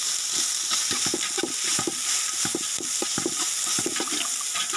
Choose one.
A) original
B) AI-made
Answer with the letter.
A